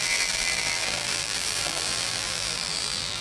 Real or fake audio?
fake